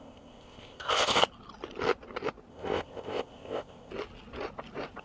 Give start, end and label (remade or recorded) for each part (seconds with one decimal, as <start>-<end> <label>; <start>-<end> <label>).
0.0-1.2 remade; 1.2-2.5 recorded; 2.5-3.9 remade; 3.9-5.0 recorded